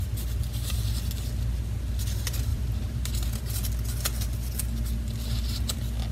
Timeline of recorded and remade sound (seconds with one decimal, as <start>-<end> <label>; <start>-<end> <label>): 0.0-2.5 recorded; 2.5-3.4 remade; 3.4-6.1 recorded